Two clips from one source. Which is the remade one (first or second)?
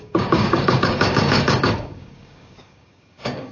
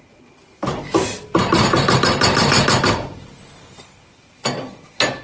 first